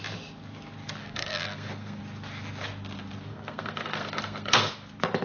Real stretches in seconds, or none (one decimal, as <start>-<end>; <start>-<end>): 0.0-1.0; 2.0-3.3; 4.7-5.2